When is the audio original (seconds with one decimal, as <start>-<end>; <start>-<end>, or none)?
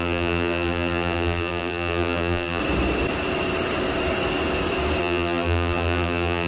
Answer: 2.6-5.0